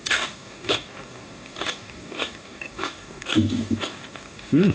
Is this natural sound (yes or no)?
no